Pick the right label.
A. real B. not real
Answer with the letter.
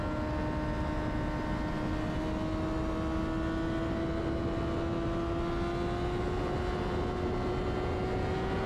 A